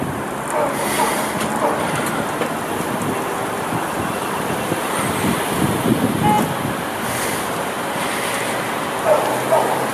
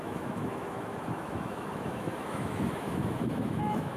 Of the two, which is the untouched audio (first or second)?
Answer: first